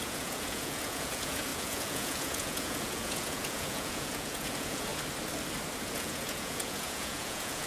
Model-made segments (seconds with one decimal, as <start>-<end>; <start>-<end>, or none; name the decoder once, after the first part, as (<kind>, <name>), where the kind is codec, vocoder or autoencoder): 0.0-4.9 (vocoder, Vocos); 5.8-7.7